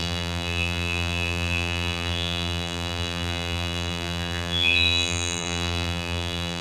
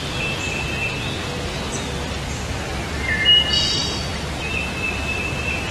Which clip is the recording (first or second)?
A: second